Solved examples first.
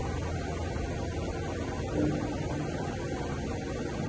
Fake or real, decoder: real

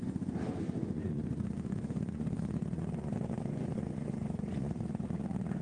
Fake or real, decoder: fake, vocoder, Vocos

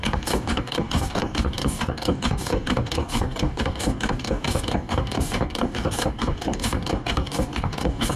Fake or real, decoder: fake, codec, DAC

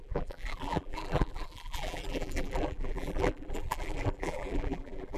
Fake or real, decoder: fake, vocoder, BigVGAN v2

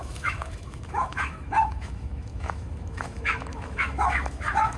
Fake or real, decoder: fake, autoencoder, DAC-VAE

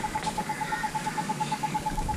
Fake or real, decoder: fake, codec, DAC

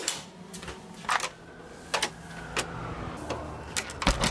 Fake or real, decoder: real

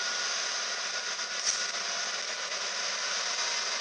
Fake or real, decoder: real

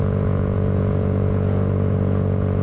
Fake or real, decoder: fake, vocoder, Vocos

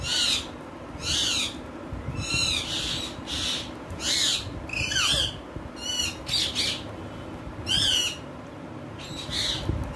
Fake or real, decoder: real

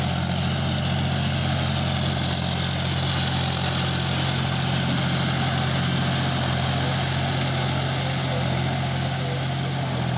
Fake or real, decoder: real